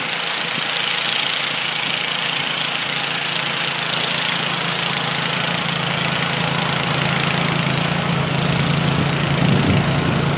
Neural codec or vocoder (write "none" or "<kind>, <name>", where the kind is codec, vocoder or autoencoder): none